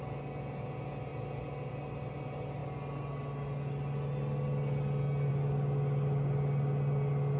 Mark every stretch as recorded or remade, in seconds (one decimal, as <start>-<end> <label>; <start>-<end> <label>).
0.0-7.4 recorded